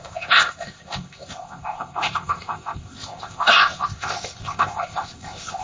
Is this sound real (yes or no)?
no